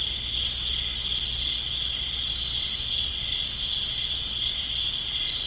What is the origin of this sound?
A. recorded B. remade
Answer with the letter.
A